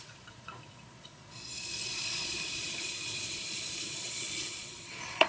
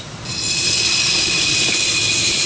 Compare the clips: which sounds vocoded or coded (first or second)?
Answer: first